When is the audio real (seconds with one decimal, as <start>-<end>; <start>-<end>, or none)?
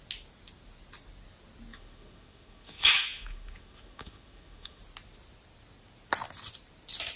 0.0-1.7; 4.8-7.2